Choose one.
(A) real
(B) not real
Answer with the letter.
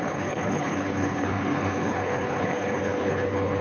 B